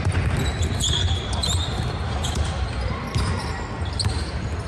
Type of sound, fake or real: real